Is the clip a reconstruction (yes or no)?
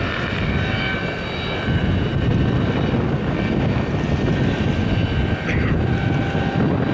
no